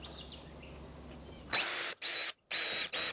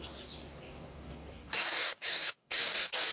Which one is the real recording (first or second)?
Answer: first